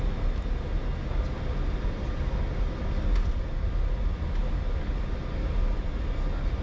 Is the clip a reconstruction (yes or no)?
no